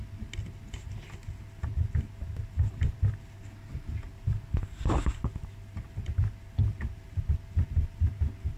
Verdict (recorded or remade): recorded